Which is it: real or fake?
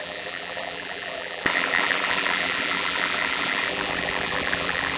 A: fake